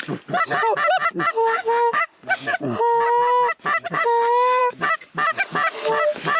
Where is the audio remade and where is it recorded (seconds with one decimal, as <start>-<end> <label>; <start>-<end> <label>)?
0.0-1.4 recorded; 1.4-2.2 remade; 2.2-3.9 recorded; 3.9-4.6 remade; 4.6-6.4 recorded